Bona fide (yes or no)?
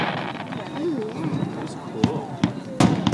yes